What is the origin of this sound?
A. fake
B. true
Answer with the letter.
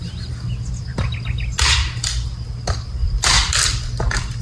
B